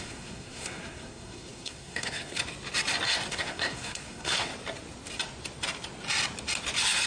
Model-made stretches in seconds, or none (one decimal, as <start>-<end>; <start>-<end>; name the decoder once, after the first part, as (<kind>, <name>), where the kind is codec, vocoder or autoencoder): 0.0-2.4 (codec, SNAC); 3.3-4.5